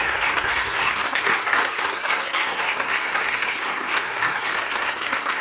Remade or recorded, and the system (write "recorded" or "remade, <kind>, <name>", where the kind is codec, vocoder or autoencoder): remade, codec, SNAC